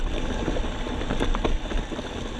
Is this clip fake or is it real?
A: real